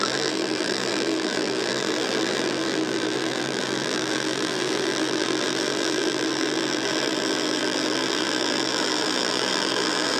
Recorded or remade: remade